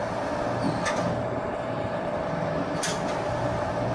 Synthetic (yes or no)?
no